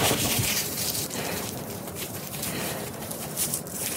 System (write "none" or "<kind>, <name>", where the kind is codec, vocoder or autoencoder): vocoder, BigVGAN v2